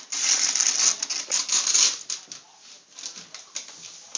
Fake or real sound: real